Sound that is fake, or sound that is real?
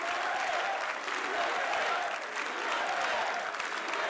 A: real